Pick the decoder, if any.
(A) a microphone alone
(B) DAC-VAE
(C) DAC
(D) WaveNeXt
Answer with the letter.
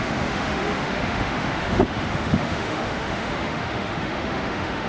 B